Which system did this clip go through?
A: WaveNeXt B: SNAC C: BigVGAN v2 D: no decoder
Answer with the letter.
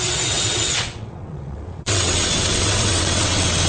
A